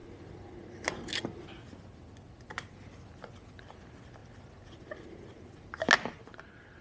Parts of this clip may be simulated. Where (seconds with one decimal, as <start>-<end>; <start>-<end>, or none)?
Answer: none